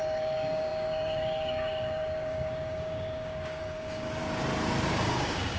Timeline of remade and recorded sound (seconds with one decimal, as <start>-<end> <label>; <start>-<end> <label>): 0.0-4.2 remade; 4.2-4.9 recorded; 4.9-5.6 remade